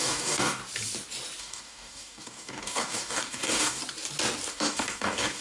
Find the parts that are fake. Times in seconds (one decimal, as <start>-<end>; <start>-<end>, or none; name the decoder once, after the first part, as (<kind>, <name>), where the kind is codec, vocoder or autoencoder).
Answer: 0.0-0.6 (codec, DAC); 1.4-3.8; 4.5-5.4